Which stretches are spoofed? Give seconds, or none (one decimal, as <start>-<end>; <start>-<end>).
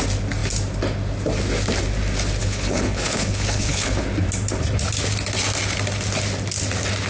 2.4-4.0